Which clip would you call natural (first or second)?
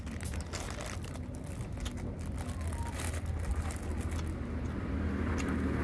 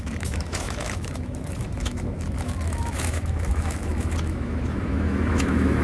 first